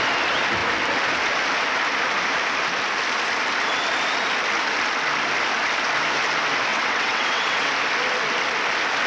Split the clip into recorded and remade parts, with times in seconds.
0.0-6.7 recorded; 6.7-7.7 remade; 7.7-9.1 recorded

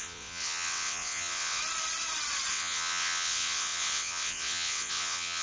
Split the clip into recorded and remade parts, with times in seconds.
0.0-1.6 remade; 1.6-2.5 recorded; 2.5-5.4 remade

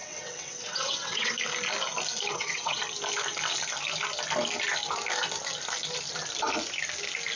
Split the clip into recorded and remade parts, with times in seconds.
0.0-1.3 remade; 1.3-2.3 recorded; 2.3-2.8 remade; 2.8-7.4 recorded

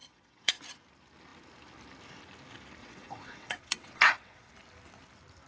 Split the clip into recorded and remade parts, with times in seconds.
0.0-0.6 remade; 0.6-2.8 recorded; 2.8-4.5 remade; 4.5-5.5 recorded

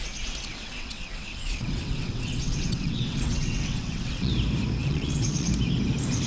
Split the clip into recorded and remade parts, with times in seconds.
0.0-0.5 recorded; 0.5-4.3 remade; 4.3-4.8 recorded; 4.8-5.5 remade; 5.5-6.3 recorded